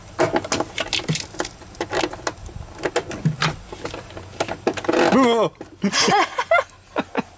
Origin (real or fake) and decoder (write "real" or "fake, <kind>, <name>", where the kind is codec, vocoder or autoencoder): real